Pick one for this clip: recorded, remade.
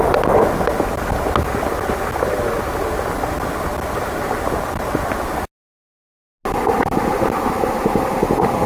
recorded